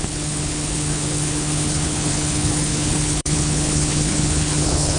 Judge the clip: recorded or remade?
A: remade